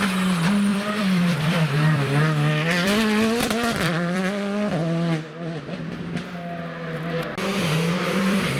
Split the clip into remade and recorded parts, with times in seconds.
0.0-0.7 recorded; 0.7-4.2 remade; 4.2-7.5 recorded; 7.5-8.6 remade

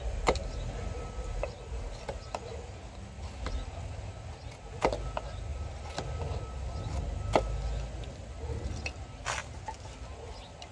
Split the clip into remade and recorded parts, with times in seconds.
0.0-9.4 recorded; 9.4-9.9 remade; 9.9-10.7 recorded

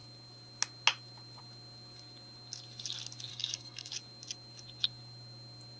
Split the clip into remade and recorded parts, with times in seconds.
0.0-3.3 recorded; 3.3-3.9 remade; 3.9-5.8 recorded